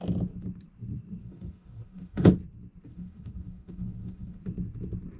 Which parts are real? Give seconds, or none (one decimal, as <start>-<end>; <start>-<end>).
0.0-1.2; 2.3-2.9; 4.4-5.2